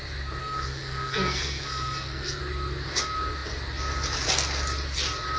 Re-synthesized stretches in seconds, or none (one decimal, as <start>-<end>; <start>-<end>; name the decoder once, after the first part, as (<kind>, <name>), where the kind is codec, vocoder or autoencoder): 0.4-2.4 (codec, SNAC)